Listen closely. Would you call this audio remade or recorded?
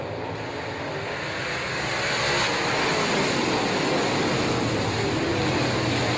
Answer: recorded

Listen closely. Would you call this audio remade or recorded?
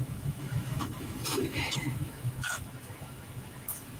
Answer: remade